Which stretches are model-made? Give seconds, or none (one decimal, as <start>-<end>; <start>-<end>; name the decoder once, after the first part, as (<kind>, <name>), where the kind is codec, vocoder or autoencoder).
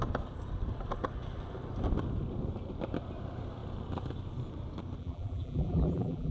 5.0-6.3 (vocoder, BigVGAN v2)